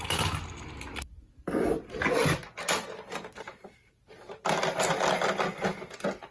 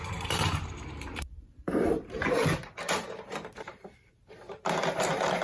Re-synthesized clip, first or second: second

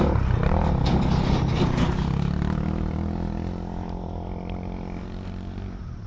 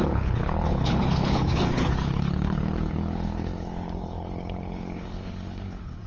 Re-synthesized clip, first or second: second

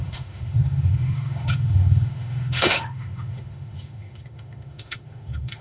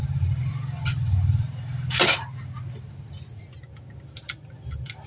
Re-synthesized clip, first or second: first